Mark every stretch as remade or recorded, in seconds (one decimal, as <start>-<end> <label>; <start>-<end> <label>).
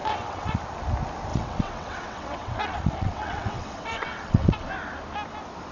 0.0-0.6 remade; 0.6-1.3 recorded; 1.3-4.7 remade; 4.7-5.7 recorded